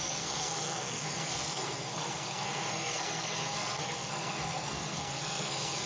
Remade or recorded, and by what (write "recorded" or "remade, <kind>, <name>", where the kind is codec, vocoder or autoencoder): remade, codec, SNAC